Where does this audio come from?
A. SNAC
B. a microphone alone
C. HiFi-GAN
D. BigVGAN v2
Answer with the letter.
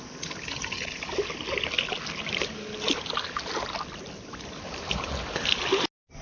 B